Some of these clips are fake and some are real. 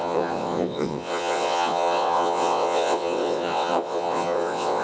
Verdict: fake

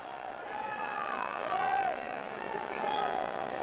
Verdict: fake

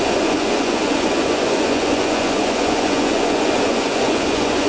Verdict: fake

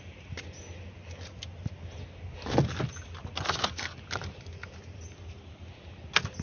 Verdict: real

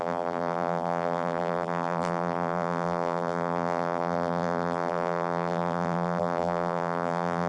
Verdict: fake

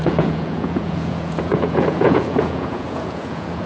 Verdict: fake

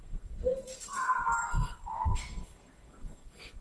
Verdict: fake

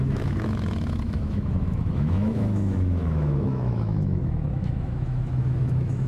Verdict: fake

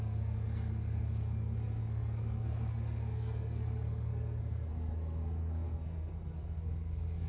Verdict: fake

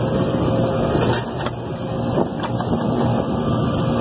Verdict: real